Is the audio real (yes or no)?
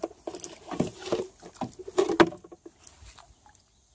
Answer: yes